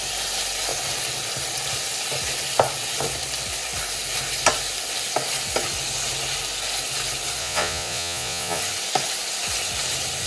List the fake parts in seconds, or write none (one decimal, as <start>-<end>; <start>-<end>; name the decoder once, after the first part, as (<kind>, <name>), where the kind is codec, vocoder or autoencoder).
7.4-8.6 (vocoder, Vocos)